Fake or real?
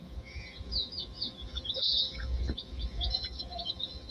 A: fake